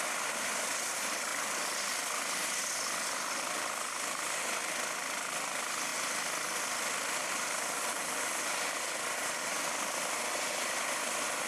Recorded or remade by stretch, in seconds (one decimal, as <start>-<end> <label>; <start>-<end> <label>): 0.0-11.5 recorded